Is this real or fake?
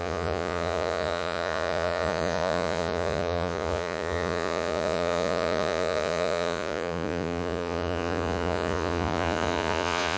fake